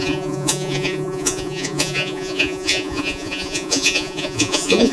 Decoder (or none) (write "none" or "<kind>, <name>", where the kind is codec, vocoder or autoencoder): vocoder, Vocos